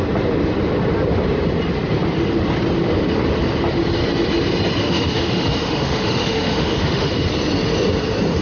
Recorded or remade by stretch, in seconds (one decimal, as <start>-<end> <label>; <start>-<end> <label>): 0.0-4.8 recorded; 4.8-7.1 remade; 7.1-8.4 recorded